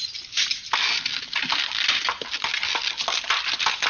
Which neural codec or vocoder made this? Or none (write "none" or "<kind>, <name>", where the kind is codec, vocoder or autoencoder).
none